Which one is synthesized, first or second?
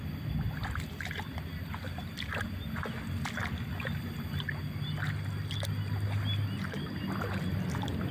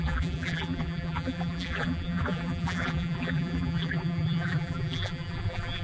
second